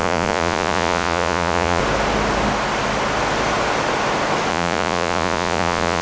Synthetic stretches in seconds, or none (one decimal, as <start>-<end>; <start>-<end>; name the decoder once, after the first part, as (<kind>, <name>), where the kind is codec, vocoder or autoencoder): 0.0-1.8 (vocoder, Vocos); 4.5-6.0